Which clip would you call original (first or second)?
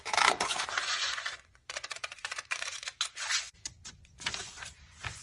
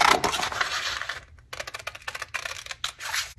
second